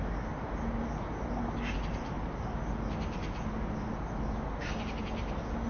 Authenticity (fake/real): real